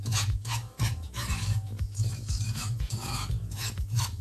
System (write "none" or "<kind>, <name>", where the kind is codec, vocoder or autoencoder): autoencoder, DAC-VAE